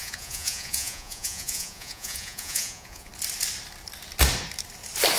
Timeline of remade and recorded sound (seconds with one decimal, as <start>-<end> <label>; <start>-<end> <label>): 0.0-3.1 remade; 3.1-5.2 recorded